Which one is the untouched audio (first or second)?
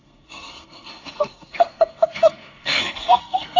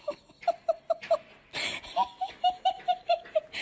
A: second